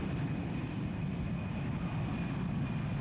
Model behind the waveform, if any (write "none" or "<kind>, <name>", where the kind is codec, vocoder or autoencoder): none